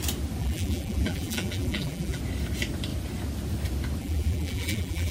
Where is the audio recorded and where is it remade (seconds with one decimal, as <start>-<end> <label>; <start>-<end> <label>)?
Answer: 0.0-0.4 recorded; 0.4-2.2 remade; 2.2-4.0 recorded; 4.0-5.1 remade